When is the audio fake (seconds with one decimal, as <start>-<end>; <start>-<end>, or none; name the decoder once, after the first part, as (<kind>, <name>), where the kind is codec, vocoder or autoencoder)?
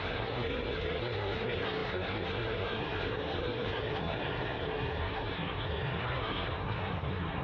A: 0.0-7.4 (codec, SNAC)